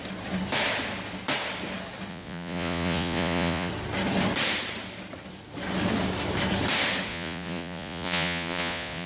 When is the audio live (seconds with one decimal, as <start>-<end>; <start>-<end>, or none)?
0.0-2.1; 3.7-7.1